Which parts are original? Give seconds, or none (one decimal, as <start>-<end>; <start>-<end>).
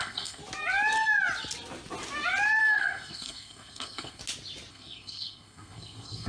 0.4-2.6; 4.2-4.7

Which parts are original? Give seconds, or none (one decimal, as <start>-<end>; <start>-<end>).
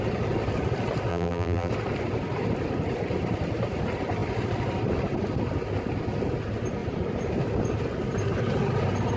0.0-1.1; 1.7-9.2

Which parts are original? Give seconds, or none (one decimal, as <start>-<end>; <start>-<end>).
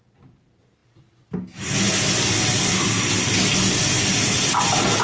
0.0-5.0